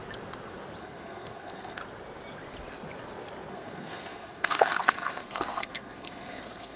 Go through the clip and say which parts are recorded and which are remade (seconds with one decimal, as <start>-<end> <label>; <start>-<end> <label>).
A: 0.0-0.8 recorded; 0.8-1.8 remade; 1.8-3.5 recorded; 3.5-6.8 remade